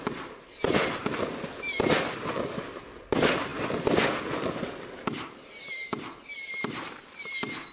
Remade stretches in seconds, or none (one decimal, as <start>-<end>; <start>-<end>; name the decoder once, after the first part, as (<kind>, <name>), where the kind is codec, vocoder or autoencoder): none